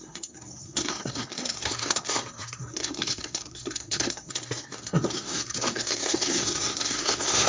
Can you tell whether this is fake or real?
fake